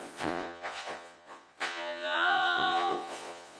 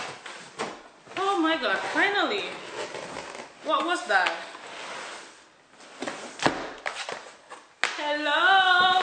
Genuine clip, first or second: second